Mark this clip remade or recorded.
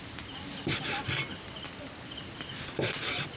recorded